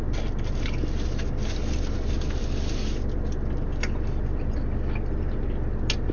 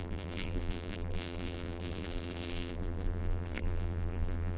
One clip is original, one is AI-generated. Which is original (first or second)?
first